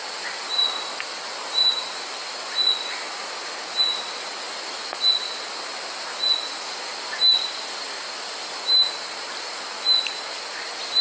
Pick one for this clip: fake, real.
real